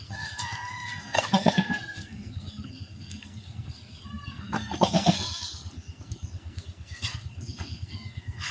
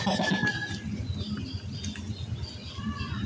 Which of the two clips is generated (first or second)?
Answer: first